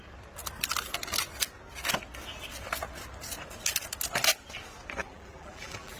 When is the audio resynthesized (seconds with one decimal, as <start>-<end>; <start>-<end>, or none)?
5.0-6.0